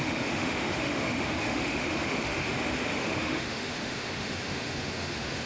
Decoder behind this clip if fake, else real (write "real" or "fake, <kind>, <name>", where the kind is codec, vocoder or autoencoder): fake, autoencoder, DAC-VAE